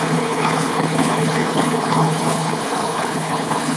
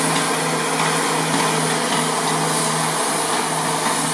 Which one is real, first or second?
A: second